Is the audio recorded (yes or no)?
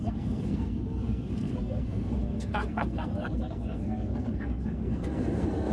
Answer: no